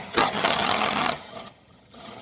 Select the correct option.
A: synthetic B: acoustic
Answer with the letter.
A